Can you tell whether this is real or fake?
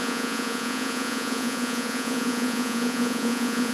fake